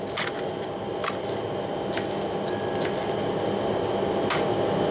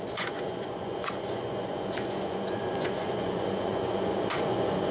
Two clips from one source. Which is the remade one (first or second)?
second